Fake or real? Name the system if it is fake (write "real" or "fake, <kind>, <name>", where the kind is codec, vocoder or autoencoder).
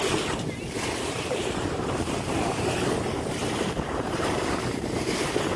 fake, vocoder, BigVGAN v2